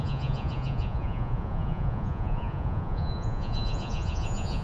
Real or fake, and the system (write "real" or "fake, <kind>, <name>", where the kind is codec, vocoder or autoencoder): fake, vocoder, Vocos